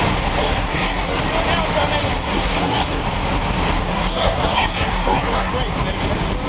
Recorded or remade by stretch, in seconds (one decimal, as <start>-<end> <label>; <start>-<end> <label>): 0.0-0.4 recorded; 0.4-1.2 remade; 1.2-2.0 recorded; 2.0-3.0 remade; 3.0-3.8 recorded; 3.8-5.5 remade; 5.5-6.5 recorded

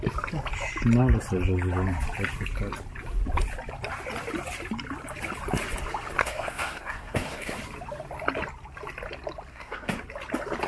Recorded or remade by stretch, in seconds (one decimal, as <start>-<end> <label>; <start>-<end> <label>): 0.0-6.2 recorded; 6.2-7.6 remade; 7.6-9.5 recorded; 9.5-10.0 remade; 10.0-10.7 recorded